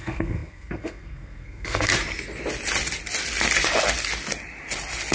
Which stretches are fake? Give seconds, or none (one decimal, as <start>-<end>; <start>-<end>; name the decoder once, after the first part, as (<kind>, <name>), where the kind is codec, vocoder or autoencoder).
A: 0.0-1.9 (codec, SNAC)